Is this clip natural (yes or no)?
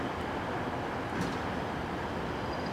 yes